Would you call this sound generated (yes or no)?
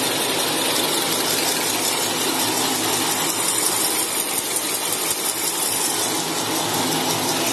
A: no